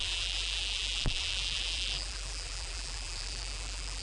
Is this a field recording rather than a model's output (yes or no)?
no